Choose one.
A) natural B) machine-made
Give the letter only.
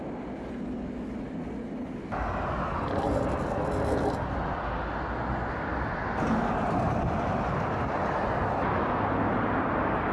A